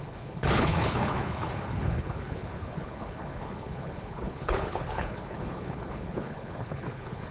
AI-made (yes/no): yes